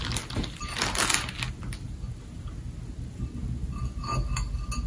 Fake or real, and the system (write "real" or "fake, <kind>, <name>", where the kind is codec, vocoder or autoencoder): real